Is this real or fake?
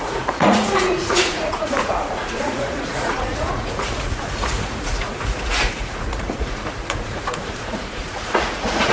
fake